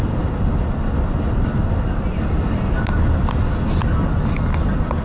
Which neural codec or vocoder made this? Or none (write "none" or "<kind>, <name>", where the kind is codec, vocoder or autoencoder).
none